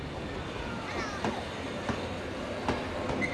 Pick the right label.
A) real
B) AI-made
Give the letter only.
A